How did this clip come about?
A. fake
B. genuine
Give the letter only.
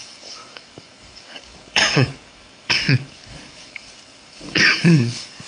A